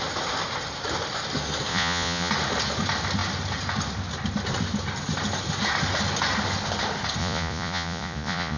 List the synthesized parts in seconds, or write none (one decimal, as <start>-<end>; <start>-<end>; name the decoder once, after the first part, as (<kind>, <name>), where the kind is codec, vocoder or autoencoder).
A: 1.7-2.3 (vocoder, Vocos); 7.2-8.6